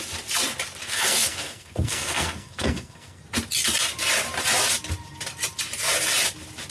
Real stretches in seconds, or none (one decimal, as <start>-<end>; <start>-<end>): 0.0-0.8; 3.2-6.7